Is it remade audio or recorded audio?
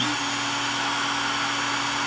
recorded